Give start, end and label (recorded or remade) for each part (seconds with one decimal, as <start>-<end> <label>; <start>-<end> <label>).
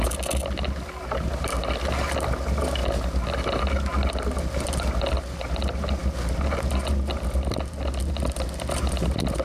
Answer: 0.0-9.4 recorded